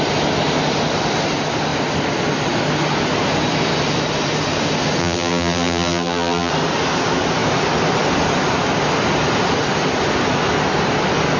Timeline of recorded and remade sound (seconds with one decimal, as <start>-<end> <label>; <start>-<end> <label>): 0.0-5.0 recorded; 5.0-6.5 remade; 6.5-11.4 recorded